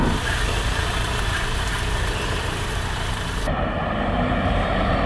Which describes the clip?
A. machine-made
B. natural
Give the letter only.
A